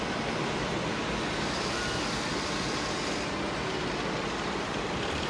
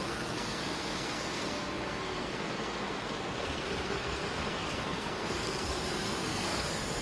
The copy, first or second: second